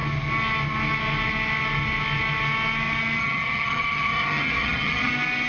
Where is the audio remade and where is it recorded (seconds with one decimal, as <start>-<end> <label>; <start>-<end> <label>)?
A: 0.0-3.2 recorded; 3.2-5.1 remade; 5.1-5.5 recorded